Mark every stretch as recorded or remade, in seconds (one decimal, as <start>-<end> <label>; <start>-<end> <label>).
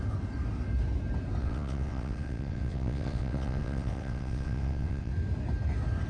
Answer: 0.0-1.4 recorded; 1.4-5.1 remade; 5.1-6.1 recorded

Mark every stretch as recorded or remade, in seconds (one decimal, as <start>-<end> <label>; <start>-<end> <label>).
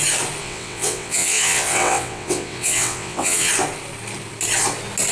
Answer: 0.0-0.4 recorded; 0.4-3.5 remade; 3.5-5.1 recorded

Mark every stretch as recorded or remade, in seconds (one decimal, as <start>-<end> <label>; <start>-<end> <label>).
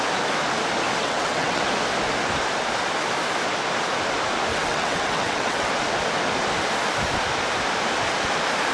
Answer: 0.0-1.0 recorded; 1.0-1.6 remade; 1.6-4.5 recorded; 4.5-5.7 remade; 5.7-8.7 recorded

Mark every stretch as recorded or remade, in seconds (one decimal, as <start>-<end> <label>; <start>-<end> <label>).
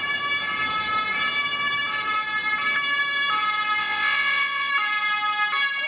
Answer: 0.0-3.8 recorded; 3.8-4.7 remade; 4.7-5.9 recorded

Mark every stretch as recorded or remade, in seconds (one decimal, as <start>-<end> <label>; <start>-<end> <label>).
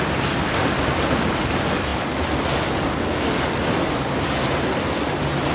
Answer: 0.0-5.5 recorded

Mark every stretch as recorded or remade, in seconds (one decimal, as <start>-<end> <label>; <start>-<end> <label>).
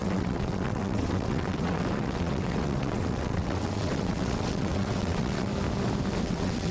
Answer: 0.0-5.5 remade; 5.5-6.2 recorded; 6.2-6.7 remade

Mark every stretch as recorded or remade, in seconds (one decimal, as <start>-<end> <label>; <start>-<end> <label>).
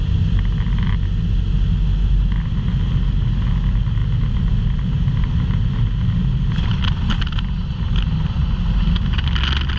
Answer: 0.0-9.8 recorded